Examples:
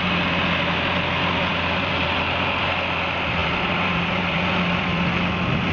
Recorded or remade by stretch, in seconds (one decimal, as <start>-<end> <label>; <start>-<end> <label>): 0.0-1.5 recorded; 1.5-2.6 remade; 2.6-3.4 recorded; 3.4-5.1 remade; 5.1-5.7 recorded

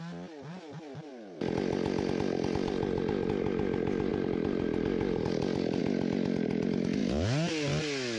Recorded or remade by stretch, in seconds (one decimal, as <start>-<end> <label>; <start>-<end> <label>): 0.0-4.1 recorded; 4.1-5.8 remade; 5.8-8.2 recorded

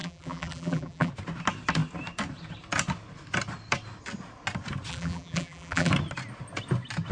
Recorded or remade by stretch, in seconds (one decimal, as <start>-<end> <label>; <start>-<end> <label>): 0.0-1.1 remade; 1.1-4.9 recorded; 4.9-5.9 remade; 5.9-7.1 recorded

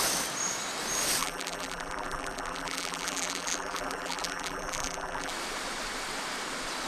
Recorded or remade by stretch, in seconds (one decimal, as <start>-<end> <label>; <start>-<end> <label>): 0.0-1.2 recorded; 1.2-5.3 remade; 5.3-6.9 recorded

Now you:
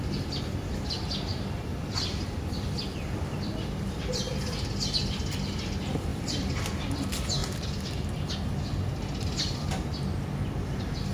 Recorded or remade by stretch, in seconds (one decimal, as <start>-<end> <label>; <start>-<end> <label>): 0.0-1.3 recorded; 1.3-4.7 remade; 4.7-6.1 recorded; 6.1-6.6 remade; 6.6-7.4 recorded; 7.4-8.1 remade; 8.1-11.1 recorded

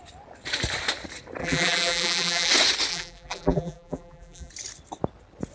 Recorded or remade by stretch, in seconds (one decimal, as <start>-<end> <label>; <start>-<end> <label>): 0.0-1.4 recorded; 1.4-2.5 remade; 2.5-2.9 recorded; 2.9-4.5 remade; 4.5-5.5 recorded

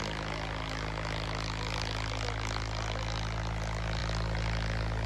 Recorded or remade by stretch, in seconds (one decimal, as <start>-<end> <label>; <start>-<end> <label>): 0.0-5.1 recorded

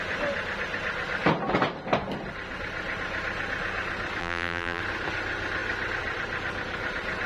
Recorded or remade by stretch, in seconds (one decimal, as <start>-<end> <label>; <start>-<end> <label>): 0.0-4.2 recorded; 4.2-4.8 remade; 4.8-7.3 recorded